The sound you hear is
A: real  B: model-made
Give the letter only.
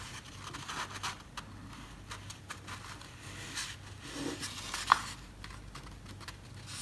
A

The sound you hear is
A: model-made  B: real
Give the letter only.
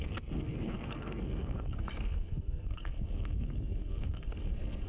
A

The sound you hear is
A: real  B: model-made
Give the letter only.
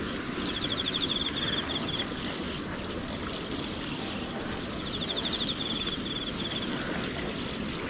A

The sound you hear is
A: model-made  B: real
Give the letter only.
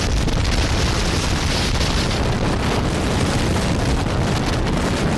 B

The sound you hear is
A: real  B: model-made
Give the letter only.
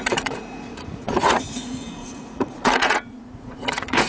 B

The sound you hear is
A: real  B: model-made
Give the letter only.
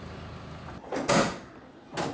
A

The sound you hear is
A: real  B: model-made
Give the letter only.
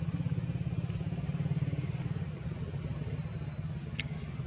A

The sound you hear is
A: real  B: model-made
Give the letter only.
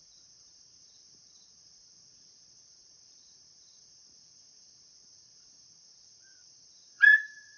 B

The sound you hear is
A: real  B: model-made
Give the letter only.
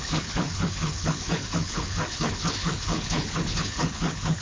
B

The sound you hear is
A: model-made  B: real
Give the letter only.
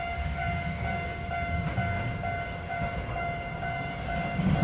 A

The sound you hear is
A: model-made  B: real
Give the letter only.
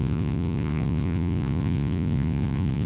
A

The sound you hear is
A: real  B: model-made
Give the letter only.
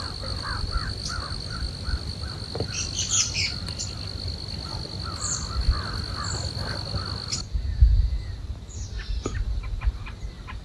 A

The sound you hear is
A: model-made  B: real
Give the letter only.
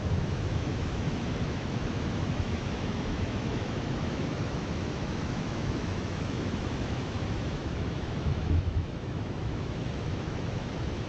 A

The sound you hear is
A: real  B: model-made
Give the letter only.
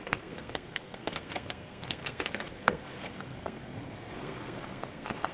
B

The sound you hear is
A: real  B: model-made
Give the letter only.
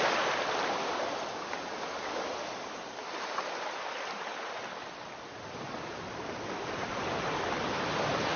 A